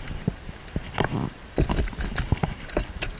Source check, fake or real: fake